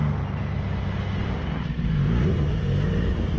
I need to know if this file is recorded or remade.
recorded